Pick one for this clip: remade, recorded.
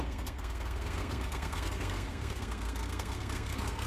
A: remade